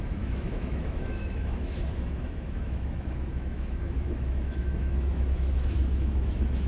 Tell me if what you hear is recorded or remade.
remade